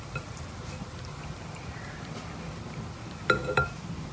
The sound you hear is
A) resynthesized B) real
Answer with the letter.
B